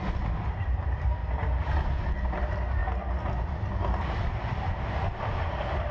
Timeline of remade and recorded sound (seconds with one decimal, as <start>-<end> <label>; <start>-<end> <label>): 0.0-1.2 remade; 1.2-2.4 recorded; 2.4-2.8 remade; 2.8-3.5 recorded; 3.5-5.9 remade